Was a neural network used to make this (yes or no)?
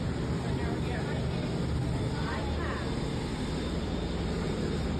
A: no